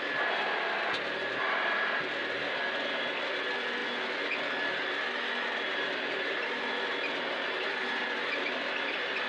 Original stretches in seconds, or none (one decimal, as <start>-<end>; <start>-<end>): 0.0-9.3